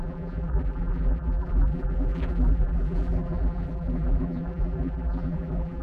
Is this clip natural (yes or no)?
no